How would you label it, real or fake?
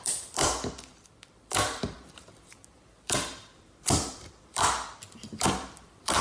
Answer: fake